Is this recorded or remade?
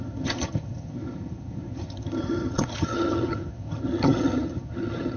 remade